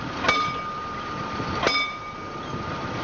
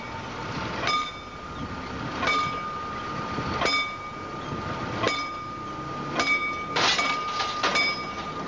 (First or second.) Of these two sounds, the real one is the second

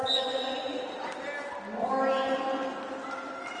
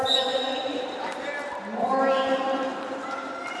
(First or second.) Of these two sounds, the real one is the first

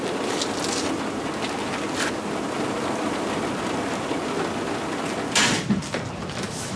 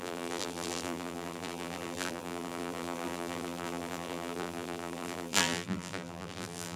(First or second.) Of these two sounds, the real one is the first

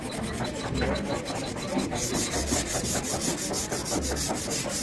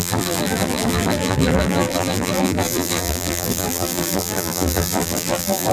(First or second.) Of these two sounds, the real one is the first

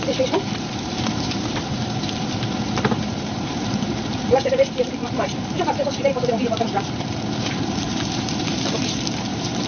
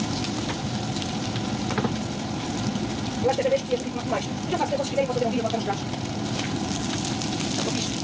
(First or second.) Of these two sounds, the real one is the second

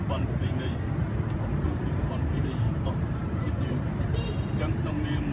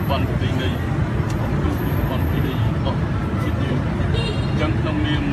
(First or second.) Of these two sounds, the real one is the second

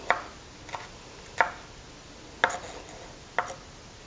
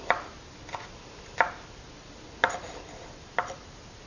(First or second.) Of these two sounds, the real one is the first